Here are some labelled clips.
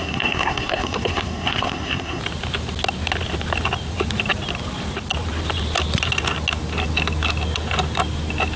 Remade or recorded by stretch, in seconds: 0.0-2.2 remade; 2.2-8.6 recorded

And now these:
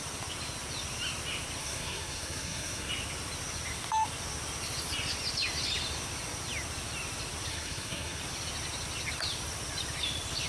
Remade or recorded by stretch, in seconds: 0.0-1.6 recorded; 1.6-2.9 remade; 2.9-7.5 recorded; 7.5-8.2 remade; 8.2-10.5 recorded

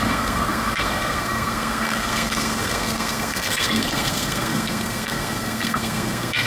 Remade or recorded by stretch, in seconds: 0.0-6.5 remade

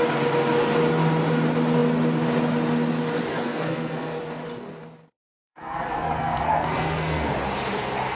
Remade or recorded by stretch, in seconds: 0.0-3.3 recorded; 3.3-4.2 remade; 4.2-5.3 recorded; 5.3-7.3 remade; 7.3-8.2 recorded

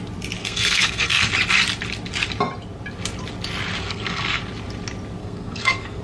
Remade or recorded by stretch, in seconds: 0.0-0.4 recorded; 0.4-1.3 remade; 1.3-3.8 recorded; 3.8-4.4 remade; 4.4-5.2 recorded; 5.2-6.0 remade

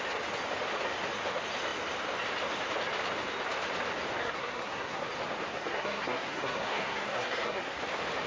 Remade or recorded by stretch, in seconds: 0.0-4.2 recorded; 4.2-5.0 remade; 5.0-5.5 recorded; 5.5-7.8 remade; 7.8-8.3 recorded

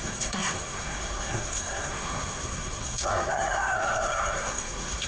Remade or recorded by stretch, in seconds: 0.0-5.1 remade

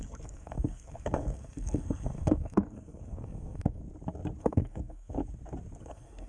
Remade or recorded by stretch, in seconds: 0.0-3.8 remade; 3.8-4.4 recorded; 4.4-5.2 remade; 5.2-5.8 recorded; 5.8-6.3 remade